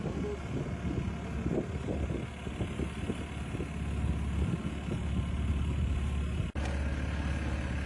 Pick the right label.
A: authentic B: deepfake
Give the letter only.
A